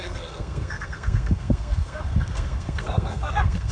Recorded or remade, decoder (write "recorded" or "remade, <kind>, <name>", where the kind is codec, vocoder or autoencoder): remade, codec, SNAC